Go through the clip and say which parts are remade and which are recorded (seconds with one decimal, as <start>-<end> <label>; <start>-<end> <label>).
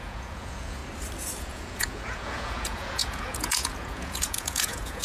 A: 0.0-0.8 remade; 0.8-1.4 recorded; 1.4-5.0 remade